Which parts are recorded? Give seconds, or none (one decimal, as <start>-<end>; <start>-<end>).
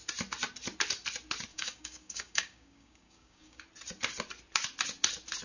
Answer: 0.0-1.5; 3.6-5.4